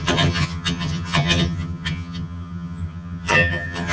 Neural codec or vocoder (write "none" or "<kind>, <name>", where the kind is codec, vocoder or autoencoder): vocoder, HiFi-GAN